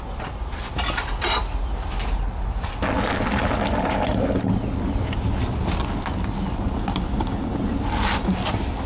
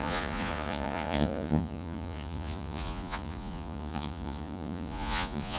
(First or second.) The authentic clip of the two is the first